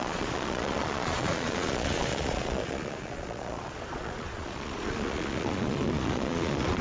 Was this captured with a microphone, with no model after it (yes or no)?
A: no